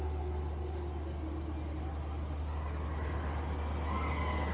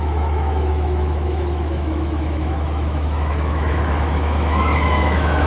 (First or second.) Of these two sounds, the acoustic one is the first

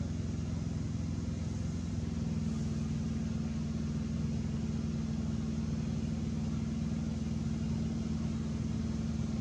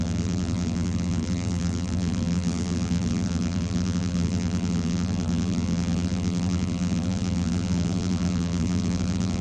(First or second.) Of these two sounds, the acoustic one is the first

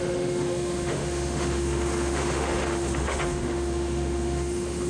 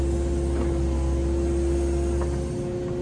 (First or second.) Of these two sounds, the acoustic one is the second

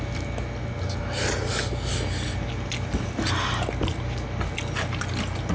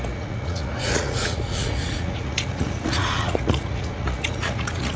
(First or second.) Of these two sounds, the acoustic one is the first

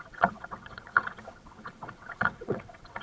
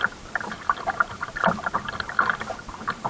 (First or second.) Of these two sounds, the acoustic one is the second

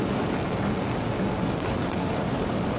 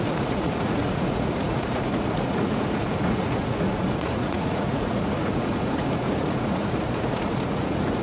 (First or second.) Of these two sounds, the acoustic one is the first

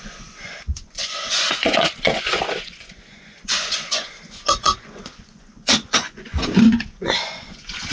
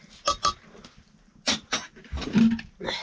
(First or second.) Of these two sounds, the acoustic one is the second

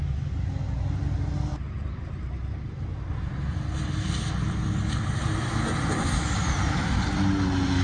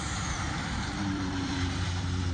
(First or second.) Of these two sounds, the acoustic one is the first